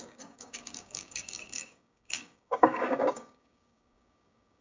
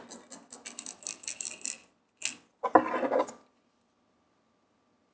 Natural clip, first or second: second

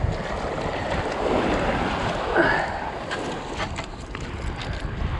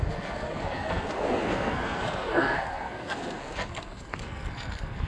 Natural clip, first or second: first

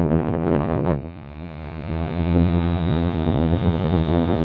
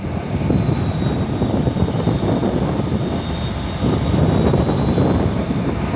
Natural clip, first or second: second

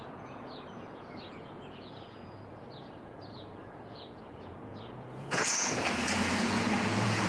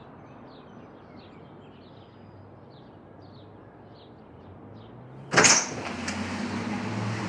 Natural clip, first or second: second